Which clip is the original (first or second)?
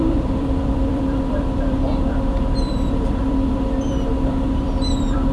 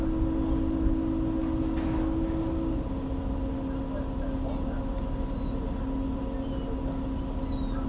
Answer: second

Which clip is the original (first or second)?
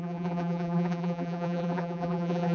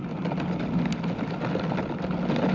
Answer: second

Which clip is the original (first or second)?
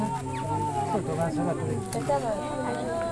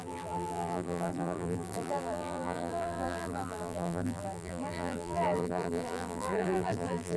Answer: first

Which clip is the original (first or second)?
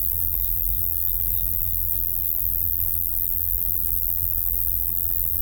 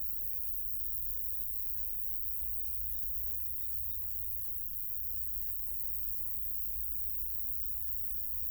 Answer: second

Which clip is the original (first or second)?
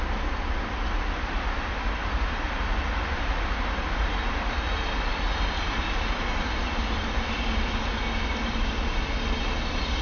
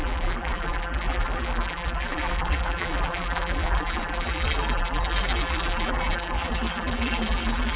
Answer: first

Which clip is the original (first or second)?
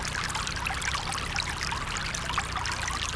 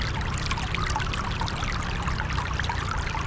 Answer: first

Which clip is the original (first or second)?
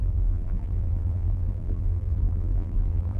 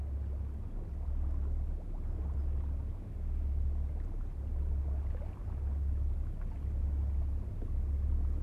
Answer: second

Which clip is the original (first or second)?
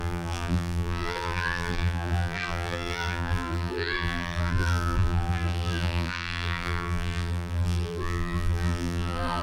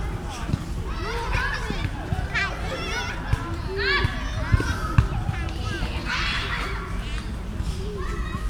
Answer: second